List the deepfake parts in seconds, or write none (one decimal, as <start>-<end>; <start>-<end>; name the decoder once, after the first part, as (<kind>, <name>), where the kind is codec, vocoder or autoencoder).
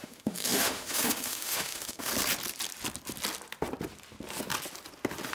0.0-2.1 (autoencoder, DAC-VAE)